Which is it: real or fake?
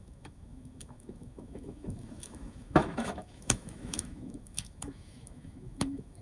fake